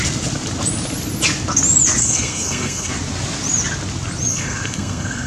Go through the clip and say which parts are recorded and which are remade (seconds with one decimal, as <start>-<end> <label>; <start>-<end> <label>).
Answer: 0.0-2.0 recorded; 2.0-2.9 remade; 2.9-4.3 recorded; 4.3-5.3 remade